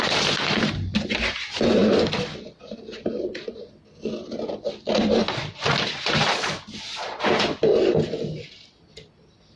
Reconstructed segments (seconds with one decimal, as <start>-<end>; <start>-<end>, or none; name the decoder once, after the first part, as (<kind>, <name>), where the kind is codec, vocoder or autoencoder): none